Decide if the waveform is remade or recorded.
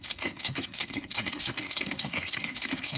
remade